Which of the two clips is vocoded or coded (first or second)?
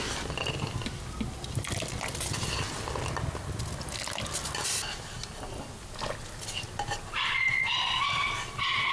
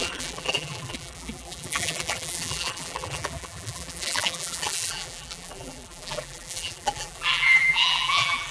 second